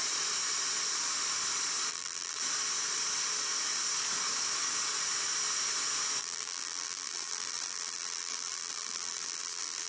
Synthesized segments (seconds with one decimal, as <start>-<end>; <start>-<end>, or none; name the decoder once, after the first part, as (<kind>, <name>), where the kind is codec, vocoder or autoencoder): 1.9-2.4 (vocoder, BigVGAN v2); 6.2-9.9